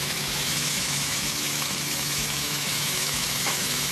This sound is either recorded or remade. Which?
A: remade